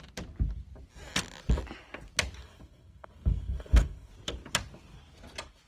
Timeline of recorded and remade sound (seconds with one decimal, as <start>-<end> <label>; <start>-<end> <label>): 0.0-2.4 recorded; 2.4-4.1 remade; 4.1-5.7 recorded